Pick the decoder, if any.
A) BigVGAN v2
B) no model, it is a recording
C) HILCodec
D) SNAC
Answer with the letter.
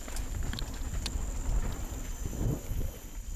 B